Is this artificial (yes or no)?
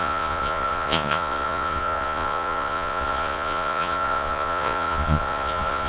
yes